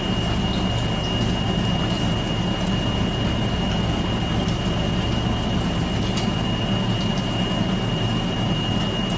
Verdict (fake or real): real